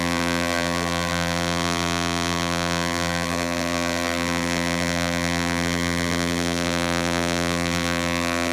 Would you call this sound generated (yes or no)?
yes